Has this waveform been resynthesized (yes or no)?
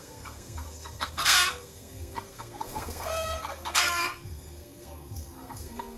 yes